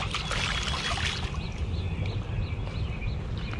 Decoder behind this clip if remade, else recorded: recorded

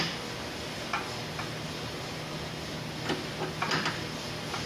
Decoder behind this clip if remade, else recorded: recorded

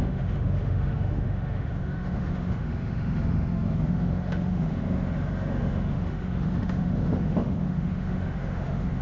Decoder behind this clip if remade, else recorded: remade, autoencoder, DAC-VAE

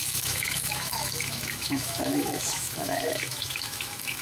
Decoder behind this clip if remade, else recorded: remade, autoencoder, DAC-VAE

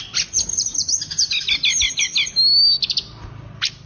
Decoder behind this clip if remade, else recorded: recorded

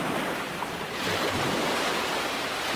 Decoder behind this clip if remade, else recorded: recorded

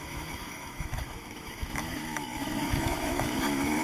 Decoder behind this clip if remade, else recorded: remade, autoencoder, DAC-VAE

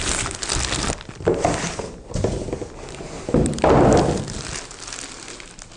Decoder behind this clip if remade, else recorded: recorded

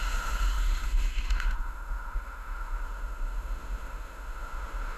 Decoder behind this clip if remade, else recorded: remade, autoencoder, DAC-VAE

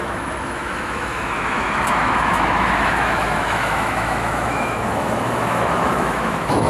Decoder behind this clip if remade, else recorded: remade, autoencoder, DAC-VAE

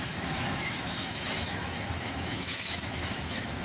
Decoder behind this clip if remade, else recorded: remade, autoencoder, DAC-VAE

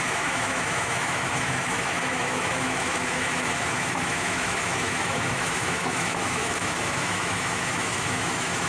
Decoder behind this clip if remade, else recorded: remade, autoencoder, DAC-VAE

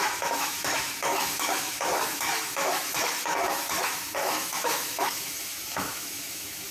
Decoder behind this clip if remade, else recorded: remade, autoencoder, DAC-VAE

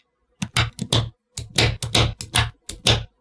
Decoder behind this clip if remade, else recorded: recorded